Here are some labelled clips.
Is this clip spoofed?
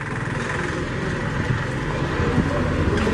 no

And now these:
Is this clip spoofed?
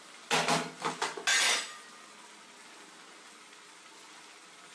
no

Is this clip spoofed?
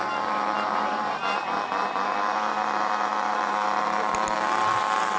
yes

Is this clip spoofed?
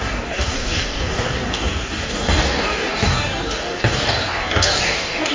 yes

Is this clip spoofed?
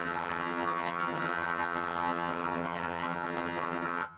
yes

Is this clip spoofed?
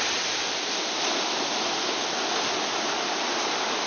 yes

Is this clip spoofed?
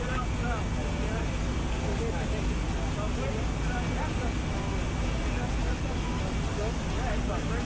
no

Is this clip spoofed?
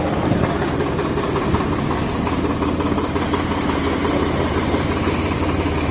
yes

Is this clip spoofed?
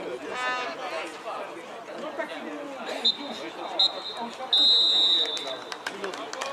no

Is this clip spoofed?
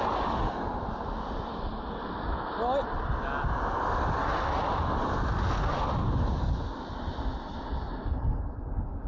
no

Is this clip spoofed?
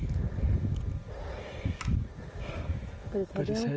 no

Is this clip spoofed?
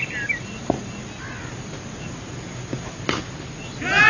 no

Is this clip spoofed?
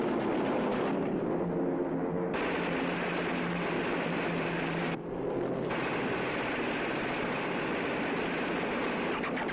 no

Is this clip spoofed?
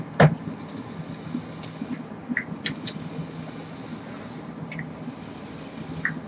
no